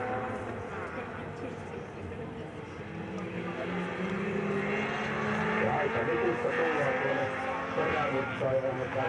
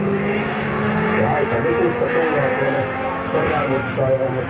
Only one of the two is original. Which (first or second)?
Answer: first